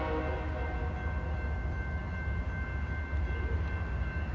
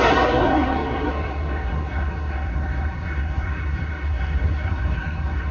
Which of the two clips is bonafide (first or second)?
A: first